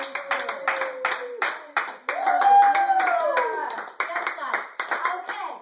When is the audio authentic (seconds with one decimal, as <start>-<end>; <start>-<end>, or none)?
0.0-1.2; 1.8-3.6